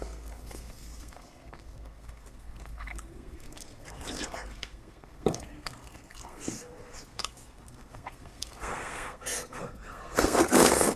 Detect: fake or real fake